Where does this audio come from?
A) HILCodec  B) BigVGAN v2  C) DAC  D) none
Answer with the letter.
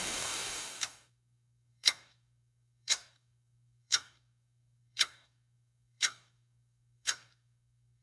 C